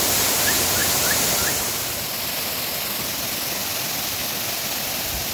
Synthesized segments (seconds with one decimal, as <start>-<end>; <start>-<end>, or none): none

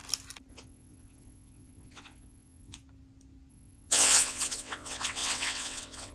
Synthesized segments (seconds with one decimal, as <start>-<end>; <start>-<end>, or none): 0.5-2.8; 3.5-6.1

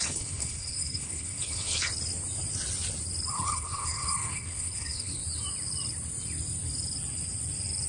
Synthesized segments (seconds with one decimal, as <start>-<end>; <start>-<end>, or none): 0.0-1.9; 3.3-5.2

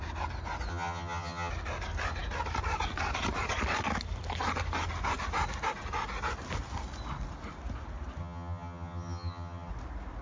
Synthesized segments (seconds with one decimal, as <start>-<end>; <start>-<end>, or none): 0.7-1.5; 8.2-9.7

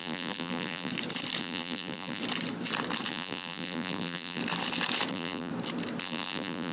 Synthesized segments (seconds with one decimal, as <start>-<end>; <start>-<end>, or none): 0.0-0.9; 1.4-2.2; 3.1-4.4; 5.1-5.5; 6.0-6.7

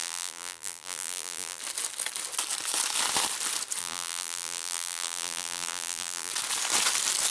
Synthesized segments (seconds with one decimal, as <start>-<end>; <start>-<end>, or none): 0.0-1.6; 3.8-6.3

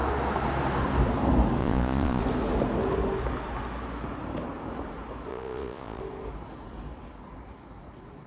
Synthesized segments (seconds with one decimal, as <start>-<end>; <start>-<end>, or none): 1.6-2.2; 5.3-6.0